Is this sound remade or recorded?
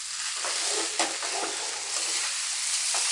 recorded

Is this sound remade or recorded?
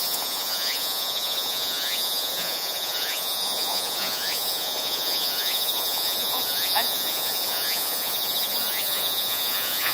remade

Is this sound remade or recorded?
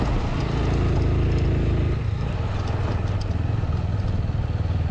recorded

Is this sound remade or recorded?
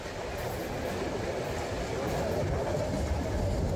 recorded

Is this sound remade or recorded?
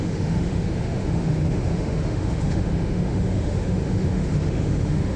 remade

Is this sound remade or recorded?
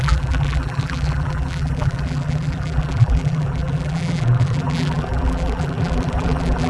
remade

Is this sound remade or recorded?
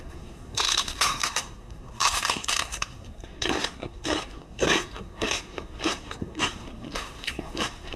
remade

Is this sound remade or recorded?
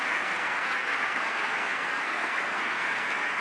remade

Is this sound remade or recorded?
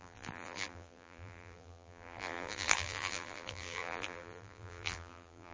remade